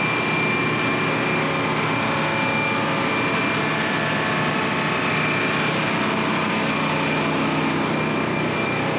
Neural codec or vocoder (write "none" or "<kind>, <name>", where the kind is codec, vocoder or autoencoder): none